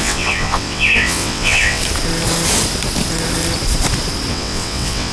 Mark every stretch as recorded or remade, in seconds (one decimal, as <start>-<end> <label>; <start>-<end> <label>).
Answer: 0.0-1.8 remade; 1.8-4.3 recorded; 4.3-5.1 remade

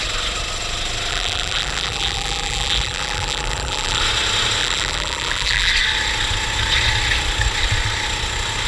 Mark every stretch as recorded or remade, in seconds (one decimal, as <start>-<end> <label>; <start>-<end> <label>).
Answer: 0.0-1.1 recorded; 1.1-4.0 remade; 4.0-4.6 recorded; 4.6-5.7 remade; 5.7-8.7 recorded

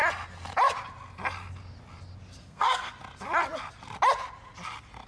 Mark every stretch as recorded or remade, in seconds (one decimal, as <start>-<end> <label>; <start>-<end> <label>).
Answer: 0.0-2.4 recorded; 2.4-2.9 remade; 2.9-5.1 recorded

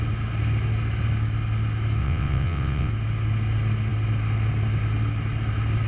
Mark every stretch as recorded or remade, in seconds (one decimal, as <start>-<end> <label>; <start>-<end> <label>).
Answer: 0.0-2.0 recorded; 2.0-2.9 remade; 2.9-5.9 recorded

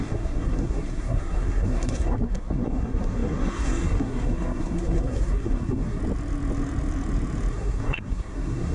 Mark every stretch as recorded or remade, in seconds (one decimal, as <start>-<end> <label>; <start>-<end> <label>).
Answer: 0.0-6.0 remade; 6.0-7.5 recorded; 7.5-8.7 remade

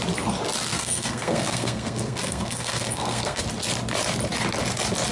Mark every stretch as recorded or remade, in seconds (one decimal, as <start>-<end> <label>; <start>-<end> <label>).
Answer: 0.0-0.7 recorded; 0.7-3.4 remade; 3.4-5.1 recorded

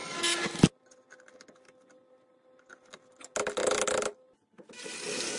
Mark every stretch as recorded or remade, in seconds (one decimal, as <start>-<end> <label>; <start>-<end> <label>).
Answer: 0.0-5.4 recorded

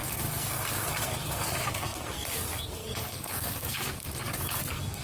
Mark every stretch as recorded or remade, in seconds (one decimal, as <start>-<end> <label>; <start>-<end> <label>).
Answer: 0.0-4.0 remade; 4.0-4.6 recorded; 4.6-5.0 remade